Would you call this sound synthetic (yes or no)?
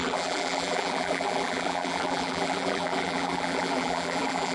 yes